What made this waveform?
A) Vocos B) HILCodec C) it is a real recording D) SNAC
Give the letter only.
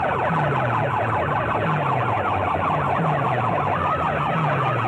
C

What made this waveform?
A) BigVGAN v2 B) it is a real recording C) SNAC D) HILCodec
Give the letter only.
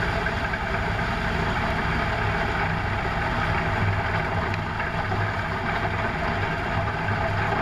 B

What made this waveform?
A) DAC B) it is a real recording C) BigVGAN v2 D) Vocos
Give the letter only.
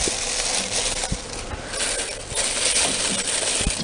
B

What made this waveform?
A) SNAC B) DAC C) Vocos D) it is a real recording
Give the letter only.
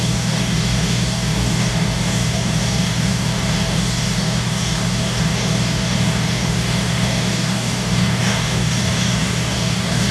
B